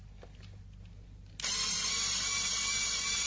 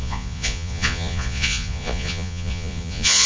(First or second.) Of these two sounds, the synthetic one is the second